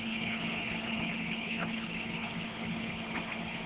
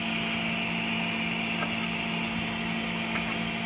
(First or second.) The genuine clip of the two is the second